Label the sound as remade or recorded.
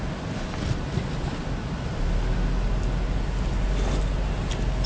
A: recorded